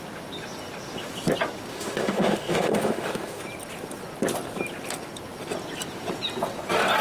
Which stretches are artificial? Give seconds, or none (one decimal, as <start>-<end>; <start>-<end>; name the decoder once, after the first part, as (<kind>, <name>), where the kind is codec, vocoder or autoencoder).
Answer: 1.7-3.4 (autoencoder, DAC-VAE)